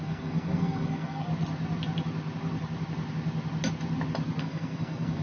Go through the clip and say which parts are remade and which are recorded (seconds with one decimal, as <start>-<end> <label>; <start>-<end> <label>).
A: 0.0-1.3 remade; 1.3-4.4 recorded; 4.4-5.2 remade